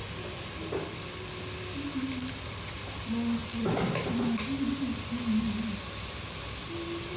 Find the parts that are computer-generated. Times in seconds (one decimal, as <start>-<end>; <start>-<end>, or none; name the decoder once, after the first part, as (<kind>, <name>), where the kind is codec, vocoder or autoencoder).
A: 3.4-4.4 (vocoder, BigVGAN v2)